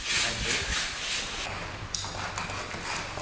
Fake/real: real